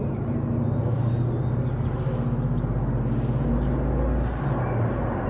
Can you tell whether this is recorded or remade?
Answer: recorded